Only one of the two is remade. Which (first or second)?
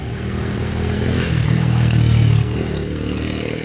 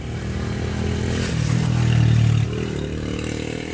first